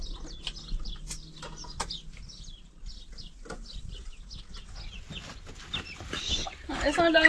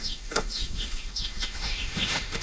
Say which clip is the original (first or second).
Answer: first